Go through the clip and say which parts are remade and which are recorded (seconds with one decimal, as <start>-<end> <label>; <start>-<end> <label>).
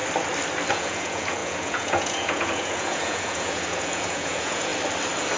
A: 0.0-0.7 recorded; 0.7-4.7 remade; 4.7-5.4 recorded